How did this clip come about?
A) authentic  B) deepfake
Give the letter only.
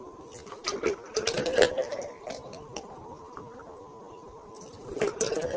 B